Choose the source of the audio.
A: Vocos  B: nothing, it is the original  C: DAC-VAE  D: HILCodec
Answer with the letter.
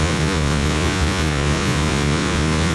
A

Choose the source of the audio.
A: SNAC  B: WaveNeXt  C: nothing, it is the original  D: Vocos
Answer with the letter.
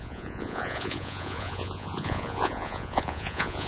D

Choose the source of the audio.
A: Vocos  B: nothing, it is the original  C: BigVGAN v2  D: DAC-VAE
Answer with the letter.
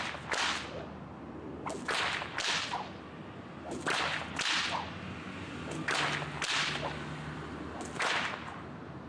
B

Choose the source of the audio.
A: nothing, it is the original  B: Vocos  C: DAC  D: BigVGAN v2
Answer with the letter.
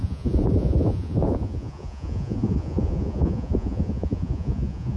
B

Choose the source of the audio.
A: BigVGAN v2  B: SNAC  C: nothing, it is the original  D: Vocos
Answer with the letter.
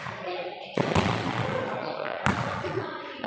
D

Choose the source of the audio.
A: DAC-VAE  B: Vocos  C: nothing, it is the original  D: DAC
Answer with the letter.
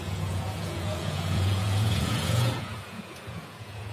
B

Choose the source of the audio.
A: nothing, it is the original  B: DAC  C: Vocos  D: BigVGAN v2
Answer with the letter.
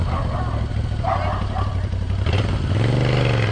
A